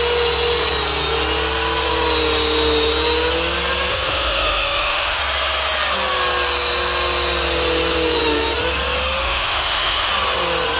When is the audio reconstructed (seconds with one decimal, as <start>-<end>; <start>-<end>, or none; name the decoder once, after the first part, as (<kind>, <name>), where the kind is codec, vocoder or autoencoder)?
3.9-5.2 (autoencoder, DAC-VAE); 9.2-10.1